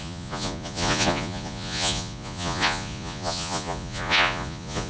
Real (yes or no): no